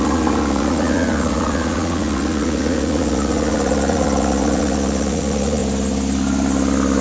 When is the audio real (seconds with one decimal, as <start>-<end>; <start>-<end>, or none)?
5.6-7.0